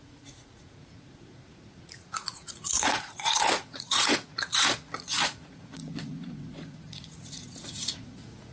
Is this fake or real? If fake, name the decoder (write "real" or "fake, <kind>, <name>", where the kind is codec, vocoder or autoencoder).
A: fake, vocoder, Vocos